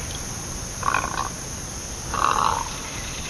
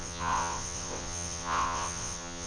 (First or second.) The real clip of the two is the first